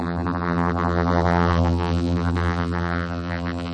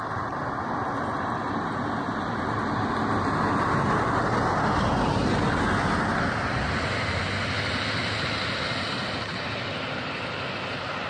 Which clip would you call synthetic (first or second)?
first